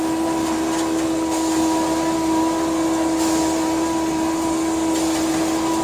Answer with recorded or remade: recorded